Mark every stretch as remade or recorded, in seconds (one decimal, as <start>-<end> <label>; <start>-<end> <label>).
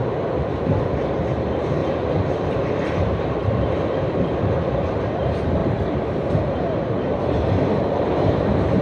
0.0-1.3 recorded; 1.3-1.8 remade; 1.8-3.0 recorded; 3.0-3.4 remade; 3.4-4.1 recorded; 4.1-8.8 remade